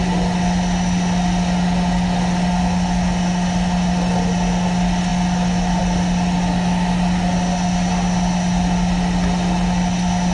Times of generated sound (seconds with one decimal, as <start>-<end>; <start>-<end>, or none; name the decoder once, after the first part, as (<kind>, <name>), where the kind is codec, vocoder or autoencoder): none

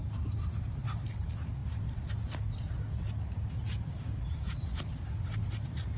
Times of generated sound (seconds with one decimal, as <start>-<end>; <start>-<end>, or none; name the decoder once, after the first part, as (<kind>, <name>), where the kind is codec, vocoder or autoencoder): none

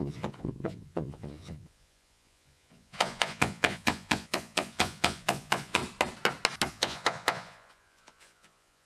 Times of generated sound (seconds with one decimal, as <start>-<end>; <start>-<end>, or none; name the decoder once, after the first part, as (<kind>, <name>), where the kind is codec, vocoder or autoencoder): 0.0-5.8 (vocoder, Vocos); 6.7-8.9

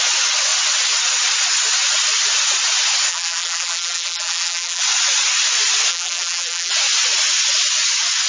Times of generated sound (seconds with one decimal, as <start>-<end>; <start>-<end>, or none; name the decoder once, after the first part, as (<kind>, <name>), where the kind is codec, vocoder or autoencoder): 3.1-4.8 (vocoder, BigVGAN v2); 5.9-6.7

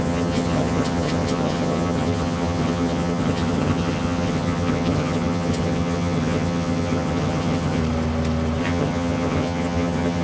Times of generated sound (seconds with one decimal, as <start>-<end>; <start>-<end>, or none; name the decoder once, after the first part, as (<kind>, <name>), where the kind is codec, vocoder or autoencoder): 0.0-7.8 (vocoder, HiFi-GAN); 8.6-10.2

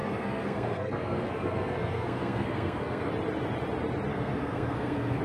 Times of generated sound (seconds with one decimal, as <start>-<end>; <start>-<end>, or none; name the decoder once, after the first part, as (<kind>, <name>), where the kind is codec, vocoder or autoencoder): 0.0-3.1 (codec, SNAC); 4.1-5.2